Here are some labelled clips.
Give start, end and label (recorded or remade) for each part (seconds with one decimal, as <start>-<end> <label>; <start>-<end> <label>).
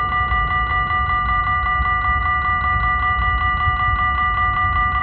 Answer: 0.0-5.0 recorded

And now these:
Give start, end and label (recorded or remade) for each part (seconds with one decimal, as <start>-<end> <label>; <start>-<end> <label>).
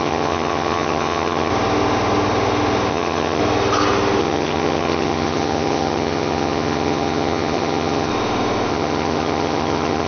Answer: 0.0-1.5 remade; 1.5-2.9 recorded; 2.9-3.4 remade; 3.4-4.2 recorded; 4.2-8.1 remade; 8.1-8.7 recorded; 8.7-10.1 remade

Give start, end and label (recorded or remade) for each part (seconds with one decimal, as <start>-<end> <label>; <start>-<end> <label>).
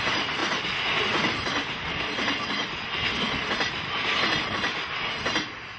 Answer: 0.0-5.8 recorded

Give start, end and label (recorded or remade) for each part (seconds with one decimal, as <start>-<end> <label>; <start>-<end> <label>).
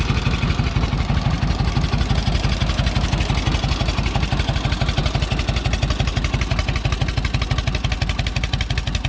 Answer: 0.0-9.1 recorded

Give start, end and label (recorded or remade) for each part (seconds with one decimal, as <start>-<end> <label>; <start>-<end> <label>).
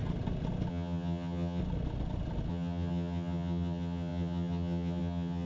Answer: 0.0-0.7 recorded; 0.7-1.6 remade; 1.6-2.5 recorded; 2.5-5.5 remade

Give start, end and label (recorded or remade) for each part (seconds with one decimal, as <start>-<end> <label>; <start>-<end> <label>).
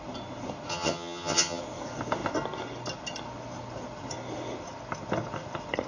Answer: 0.0-0.7 recorded; 0.7-1.6 remade; 1.6-5.9 recorded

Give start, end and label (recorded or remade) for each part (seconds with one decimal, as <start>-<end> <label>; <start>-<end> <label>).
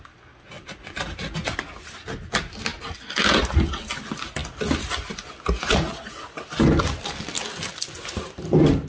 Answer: 0.0-8.9 recorded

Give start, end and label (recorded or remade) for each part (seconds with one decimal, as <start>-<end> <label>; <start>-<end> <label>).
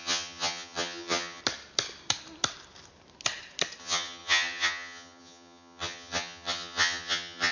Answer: 0.0-1.4 remade; 1.4-3.8 recorded; 3.8-7.5 remade